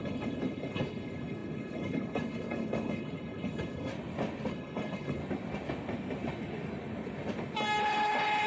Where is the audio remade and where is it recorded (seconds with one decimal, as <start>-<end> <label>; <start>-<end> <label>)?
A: 0.0-3.9 remade; 3.9-4.5 recorded; 4.5-5.2 remade; 5.2-7.8 recorded; 7.8-8.5 remade